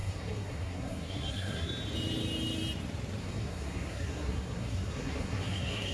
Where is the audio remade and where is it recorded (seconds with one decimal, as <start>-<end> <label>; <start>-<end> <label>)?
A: 0.0-1.7 remade; 1.7-3.2 recorded; 3.2-5.9 remade